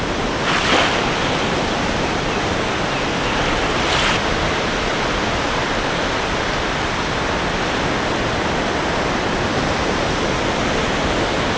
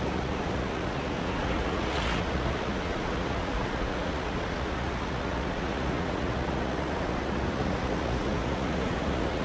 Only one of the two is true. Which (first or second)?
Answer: first